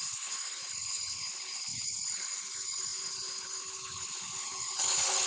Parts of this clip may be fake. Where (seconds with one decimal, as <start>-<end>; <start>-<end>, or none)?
0.0-5.3